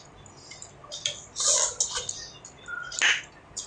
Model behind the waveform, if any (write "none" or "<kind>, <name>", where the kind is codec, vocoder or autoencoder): none